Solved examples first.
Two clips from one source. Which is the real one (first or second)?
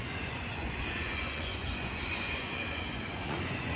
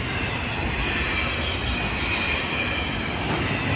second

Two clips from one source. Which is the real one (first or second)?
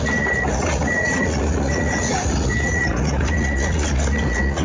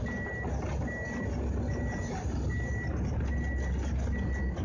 second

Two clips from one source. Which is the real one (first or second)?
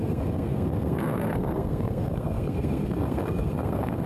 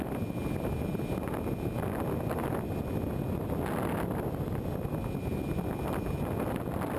second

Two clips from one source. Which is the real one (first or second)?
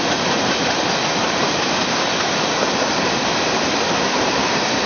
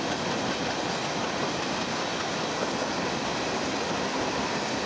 second